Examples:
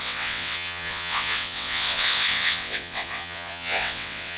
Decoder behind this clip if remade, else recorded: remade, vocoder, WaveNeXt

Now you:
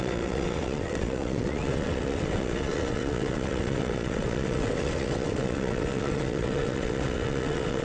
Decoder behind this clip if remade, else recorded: remade, vocoder, WaveNeXt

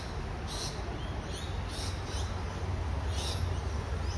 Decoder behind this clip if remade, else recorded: recorded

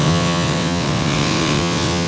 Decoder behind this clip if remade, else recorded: remade, vocoder, WaveNeXt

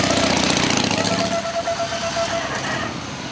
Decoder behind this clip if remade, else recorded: recorded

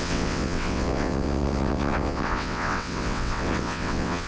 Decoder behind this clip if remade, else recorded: remade, vocoder, WaveNeXt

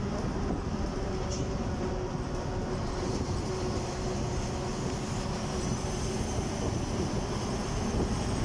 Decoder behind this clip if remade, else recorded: recorded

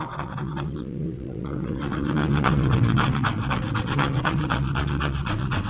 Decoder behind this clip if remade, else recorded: remade, vocoder, WaveNeXt